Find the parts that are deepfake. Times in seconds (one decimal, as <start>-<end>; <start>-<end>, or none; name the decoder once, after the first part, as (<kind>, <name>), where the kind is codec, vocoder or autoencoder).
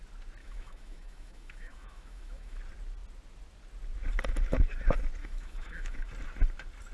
0.4-2.6 (autoencoder, DAC-VAE); 5.2-6.1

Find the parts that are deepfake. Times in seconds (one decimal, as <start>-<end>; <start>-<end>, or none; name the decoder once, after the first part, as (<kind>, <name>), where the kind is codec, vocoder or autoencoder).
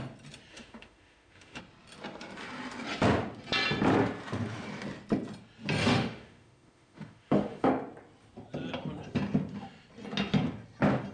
0.5-1.6 (autoencoder, DAC-VAE); 5.8-7.7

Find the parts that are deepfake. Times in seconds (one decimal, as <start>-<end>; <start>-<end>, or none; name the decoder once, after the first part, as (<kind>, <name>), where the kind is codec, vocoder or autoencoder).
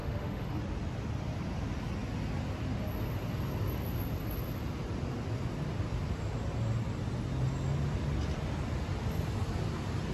0.0-0.6 (autoencoder, DAC-VAE)